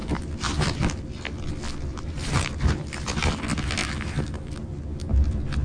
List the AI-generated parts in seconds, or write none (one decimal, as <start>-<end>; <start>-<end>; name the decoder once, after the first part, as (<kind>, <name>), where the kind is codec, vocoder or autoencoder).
0.0-0.9 (vocoder, BigVGAN v2); 1.9-2.7